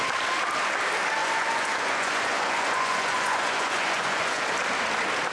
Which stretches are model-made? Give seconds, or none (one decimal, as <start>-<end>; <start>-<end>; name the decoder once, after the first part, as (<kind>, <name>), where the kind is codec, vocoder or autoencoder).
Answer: 1.2-4.4 (vocoder, Vocos)